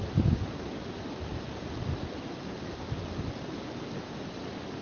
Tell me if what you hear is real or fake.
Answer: real